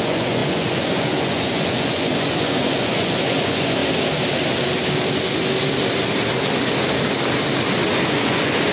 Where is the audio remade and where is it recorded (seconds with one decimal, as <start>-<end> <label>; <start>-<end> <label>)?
0.0-3.8 remade; 3.8-8.1 recorded; 8.1-8.7 remade